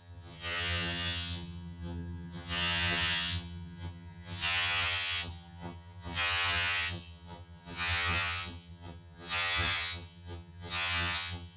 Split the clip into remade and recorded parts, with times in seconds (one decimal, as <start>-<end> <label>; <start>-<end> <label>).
0.0-11.6 remade

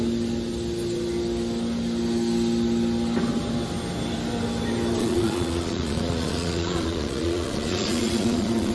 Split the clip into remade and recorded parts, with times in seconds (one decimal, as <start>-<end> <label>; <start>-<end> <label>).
0.0-5.0 recorded; 5.0-8.7 remade

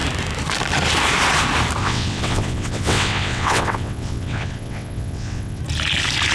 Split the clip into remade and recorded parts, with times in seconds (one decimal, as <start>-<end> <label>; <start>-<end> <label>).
0.0-1.8 recorded; 1.8-5.6 remade; 5.6-6.3 recorded

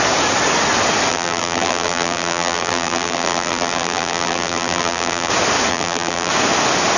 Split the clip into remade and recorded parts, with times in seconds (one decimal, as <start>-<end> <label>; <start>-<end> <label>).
0.0-1.1 recorded; 1.1-5.3 remade; 5.3-5.7 recorded; 5.7-6.3 remade; 6.3-7.0 recorded

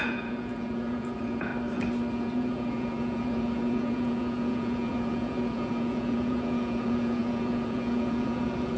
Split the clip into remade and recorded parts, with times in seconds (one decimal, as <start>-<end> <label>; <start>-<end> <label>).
0.0-1.5 remade; 1.5-2.1 recorded; 2.1-8.8 remade

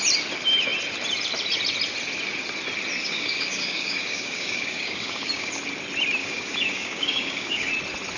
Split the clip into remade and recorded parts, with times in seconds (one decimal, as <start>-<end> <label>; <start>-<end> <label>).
0.0-3.0 recorded; 3.0-5.5 remade; 5.5-6.2 recorded; 6.2-7.7 remade; 7.7-8.2 recorded

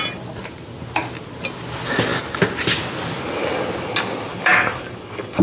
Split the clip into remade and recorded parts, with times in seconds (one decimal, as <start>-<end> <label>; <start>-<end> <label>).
0.0-4.3 recorded; 4.3-5.4 remade